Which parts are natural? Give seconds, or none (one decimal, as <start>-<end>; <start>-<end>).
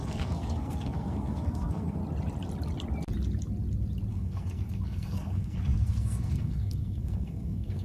2.0-4.1